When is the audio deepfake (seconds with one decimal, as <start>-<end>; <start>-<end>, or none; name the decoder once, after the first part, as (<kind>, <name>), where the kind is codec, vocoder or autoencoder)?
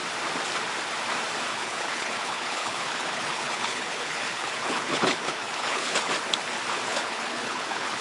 1.5-6.1 (codec, HILCodec); 6.9-8.0